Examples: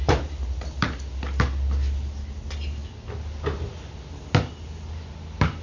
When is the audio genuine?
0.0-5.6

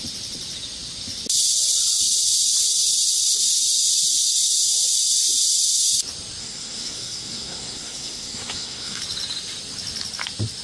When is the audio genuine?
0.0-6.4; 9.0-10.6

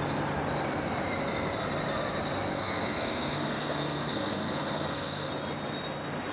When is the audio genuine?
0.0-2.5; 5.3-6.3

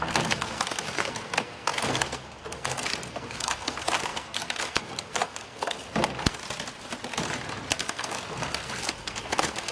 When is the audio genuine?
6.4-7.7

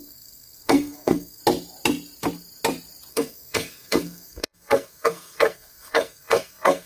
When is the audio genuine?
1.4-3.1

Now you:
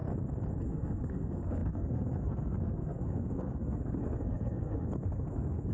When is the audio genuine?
0.0-0.6

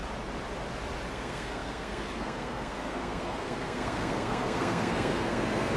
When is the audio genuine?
0.0-1.1